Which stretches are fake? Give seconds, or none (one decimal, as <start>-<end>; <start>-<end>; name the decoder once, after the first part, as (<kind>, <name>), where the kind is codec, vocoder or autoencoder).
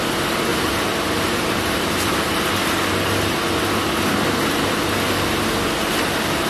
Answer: 0.5-2.4 (vocoder, BigVGAN v2)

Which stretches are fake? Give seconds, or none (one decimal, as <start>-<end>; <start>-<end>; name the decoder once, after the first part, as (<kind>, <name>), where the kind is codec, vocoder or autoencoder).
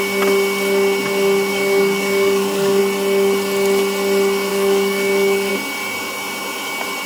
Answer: 1.5-2.8 (codec, DAC); 4.5-5.5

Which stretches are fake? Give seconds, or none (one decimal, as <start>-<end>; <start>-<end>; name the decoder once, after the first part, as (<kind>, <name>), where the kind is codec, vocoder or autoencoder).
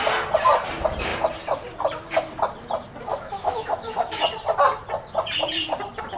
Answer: 3.1-4.2 (autoencoder, DAC-VAE)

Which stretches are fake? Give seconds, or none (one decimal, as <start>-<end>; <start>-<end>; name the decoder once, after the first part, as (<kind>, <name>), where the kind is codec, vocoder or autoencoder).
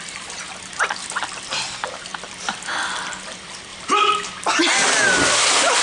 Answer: 2.1-2.6 (vocoder, BigVGAN v2); 3.7-4.6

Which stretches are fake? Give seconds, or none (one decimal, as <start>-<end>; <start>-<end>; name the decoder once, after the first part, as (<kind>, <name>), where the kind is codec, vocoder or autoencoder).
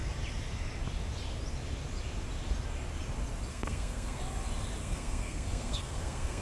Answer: 3.5-4.2 (codec, SNAC); 4.8-6.4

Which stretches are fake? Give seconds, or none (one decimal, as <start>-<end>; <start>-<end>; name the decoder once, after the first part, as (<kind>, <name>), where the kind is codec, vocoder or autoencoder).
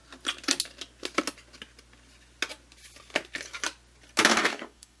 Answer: 4.3-5.0 (codec, DAC)